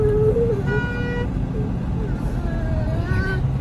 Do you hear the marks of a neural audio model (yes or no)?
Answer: no